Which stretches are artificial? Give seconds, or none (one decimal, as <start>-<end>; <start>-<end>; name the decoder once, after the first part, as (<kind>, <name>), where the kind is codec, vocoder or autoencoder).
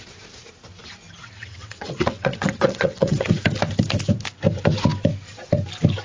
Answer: 1.2-3.3 (vocoder, WaveNeXt)